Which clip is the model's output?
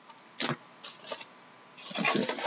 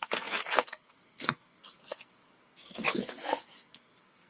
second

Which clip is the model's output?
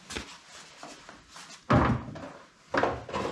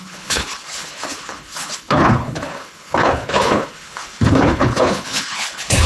second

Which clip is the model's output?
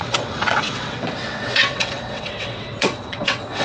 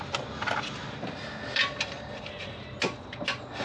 first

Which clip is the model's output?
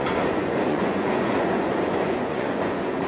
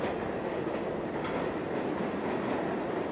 first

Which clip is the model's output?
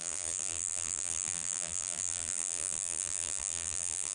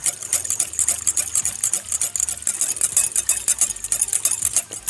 first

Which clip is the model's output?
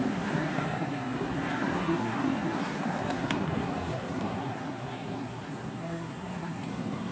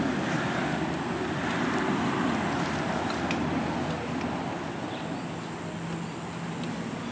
first